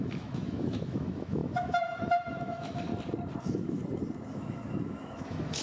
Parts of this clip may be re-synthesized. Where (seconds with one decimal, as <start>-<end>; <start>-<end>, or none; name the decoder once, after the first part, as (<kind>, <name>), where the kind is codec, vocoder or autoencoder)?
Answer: 0.0-2.9 (autoencoder, DAC-VAE); 3.4-3.8; 4.3-5.6